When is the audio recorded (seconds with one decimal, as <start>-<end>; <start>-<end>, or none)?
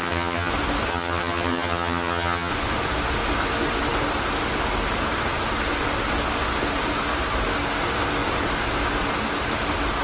0.5-0.9; 2.5-10.0